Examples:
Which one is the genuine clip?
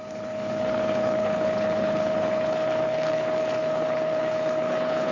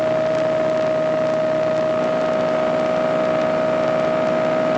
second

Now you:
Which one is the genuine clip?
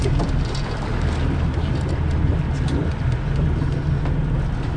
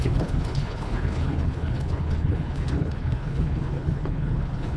first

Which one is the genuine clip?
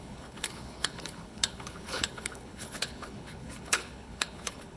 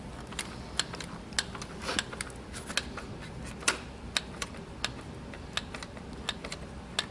second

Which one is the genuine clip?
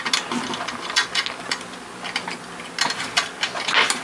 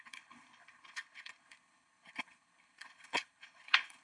first